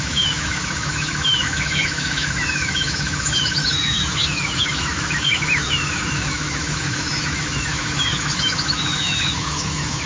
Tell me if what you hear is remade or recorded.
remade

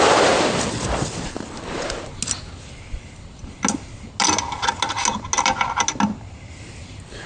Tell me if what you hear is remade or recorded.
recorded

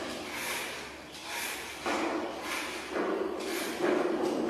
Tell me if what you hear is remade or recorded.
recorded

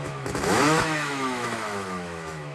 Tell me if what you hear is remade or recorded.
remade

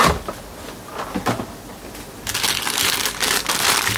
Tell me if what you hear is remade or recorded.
recorded